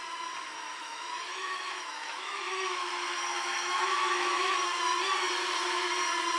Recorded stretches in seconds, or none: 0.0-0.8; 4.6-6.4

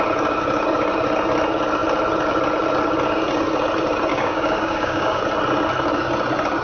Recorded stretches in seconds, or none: 0.0-4.1; 5.2-6.6